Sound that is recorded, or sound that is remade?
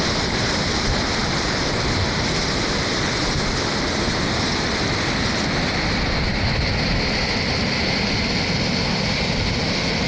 recorded